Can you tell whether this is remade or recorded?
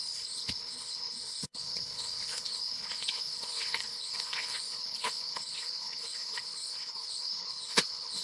remade